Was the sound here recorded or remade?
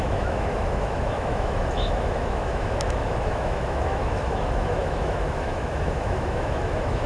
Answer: remade